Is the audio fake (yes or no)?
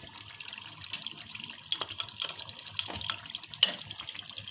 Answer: no